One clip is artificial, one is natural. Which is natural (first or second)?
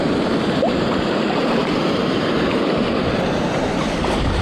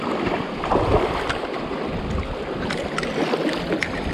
second